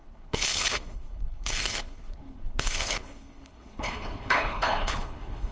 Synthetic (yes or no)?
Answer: yes